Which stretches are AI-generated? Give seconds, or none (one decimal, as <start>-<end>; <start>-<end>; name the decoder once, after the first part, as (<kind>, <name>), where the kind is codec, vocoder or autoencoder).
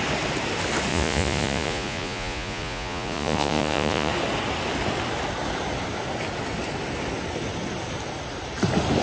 0.9-4.1 (vocoder, Vocos)